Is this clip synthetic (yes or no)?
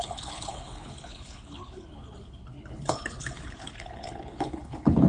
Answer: yes